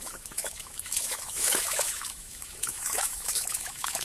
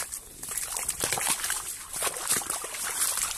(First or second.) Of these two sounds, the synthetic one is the first